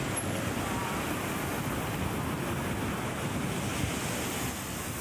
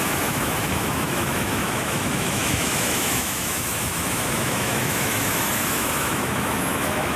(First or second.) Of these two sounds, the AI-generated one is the second